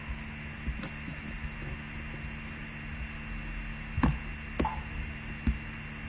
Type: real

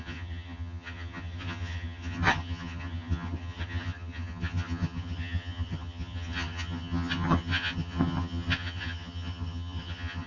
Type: fake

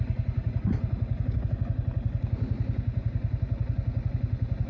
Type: real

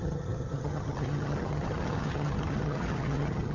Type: fake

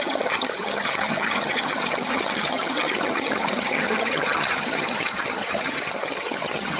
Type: fake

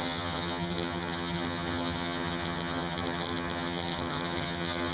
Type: fake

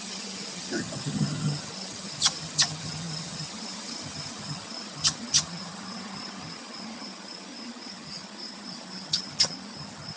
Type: fake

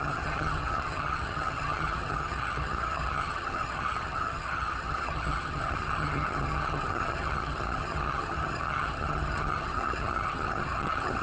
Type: fake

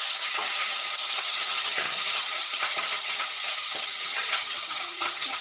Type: fake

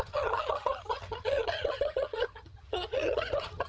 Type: fake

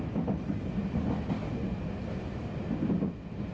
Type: real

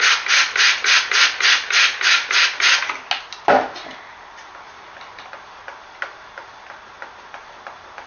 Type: real